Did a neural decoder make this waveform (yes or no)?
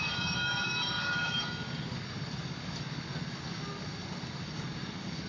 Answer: yes